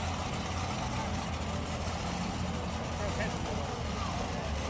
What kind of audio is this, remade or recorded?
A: recorded